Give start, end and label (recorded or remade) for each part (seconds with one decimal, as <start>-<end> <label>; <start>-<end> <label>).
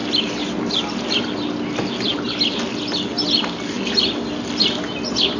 0.0-5.4 recorded